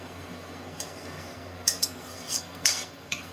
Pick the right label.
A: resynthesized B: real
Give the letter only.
A